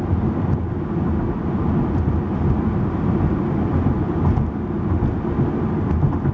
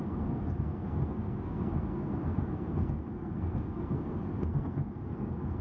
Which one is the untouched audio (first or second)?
first